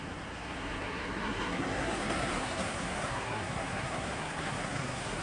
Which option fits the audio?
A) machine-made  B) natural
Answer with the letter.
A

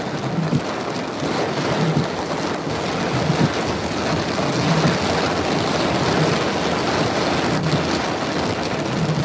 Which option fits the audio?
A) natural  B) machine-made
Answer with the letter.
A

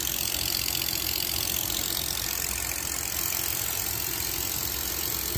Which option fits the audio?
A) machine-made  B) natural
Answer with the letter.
B